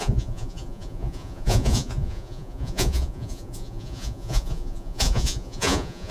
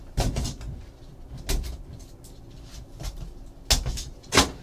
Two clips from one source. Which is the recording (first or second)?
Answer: second